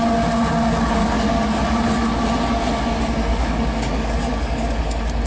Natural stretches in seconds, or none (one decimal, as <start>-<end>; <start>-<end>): 0.0-1.0; 1.6-3.3; 4.8-5.3

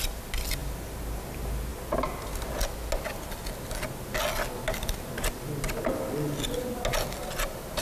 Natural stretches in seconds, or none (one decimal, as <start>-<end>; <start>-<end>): 0.0-7.8

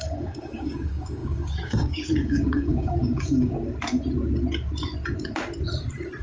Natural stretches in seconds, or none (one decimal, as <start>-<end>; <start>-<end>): 3.5-6.2